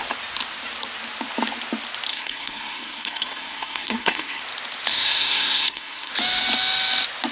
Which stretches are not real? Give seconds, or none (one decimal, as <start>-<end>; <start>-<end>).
2.1-4.4; 4.9-6.1